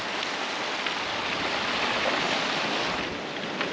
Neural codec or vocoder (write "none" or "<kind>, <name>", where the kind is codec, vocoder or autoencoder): none